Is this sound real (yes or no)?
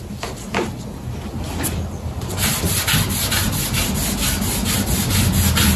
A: yes